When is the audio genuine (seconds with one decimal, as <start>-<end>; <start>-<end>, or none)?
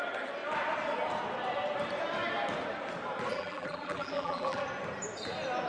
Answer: 0.0-3.3; 4.6-5.7